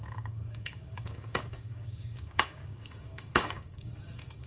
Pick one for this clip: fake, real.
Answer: fake